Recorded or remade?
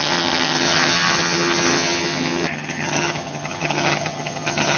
remade